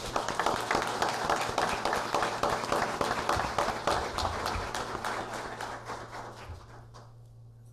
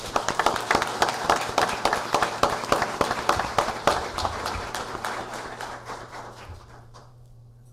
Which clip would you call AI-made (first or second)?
second